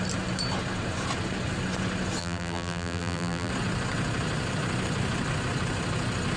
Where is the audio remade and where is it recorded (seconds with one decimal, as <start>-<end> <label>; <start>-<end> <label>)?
0.0-2.2 recorded; 2.2-3.5 remade; 3.5-6.4 recorded